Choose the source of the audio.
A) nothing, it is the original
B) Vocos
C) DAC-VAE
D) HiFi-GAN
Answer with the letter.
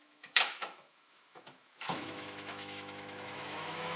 C